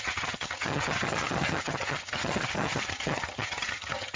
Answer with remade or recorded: remade